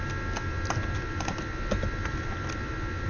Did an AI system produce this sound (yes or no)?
no